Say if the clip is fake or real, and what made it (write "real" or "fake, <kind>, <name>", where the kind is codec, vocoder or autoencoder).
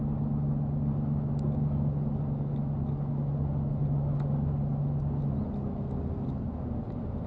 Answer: real